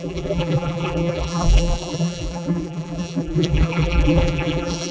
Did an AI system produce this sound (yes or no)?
yes